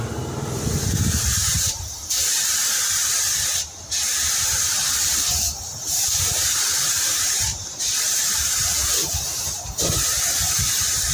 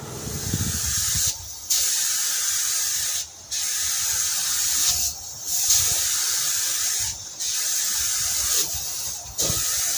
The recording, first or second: second